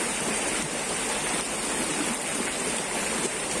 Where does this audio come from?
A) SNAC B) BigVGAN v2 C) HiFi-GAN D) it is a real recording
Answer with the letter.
D